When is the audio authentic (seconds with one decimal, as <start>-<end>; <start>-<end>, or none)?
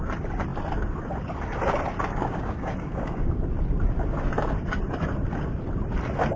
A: 0.0-2.1; 3.4-6.4